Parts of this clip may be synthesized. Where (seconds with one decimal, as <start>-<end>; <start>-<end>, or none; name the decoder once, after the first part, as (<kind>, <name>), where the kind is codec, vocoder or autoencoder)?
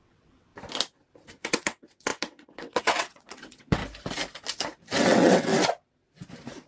0.0-0.5 (vocoder, WaveNeXt); 1.4-3.8; 5.0-5.5